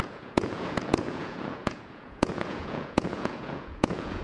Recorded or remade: remade